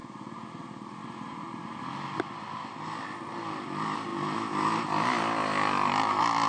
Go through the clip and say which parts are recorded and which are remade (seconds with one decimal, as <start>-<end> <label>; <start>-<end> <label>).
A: 0.0-6.5 recorded